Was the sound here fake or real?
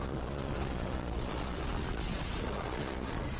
fake